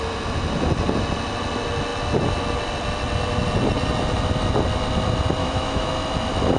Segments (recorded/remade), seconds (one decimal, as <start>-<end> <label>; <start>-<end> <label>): 0.0-5.4 recorded; 5.4-5.9 remade; 5.9-6.6 recorded